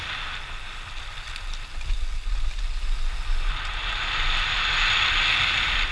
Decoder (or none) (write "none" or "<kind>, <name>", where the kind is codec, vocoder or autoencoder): none